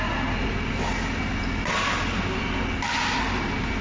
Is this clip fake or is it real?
real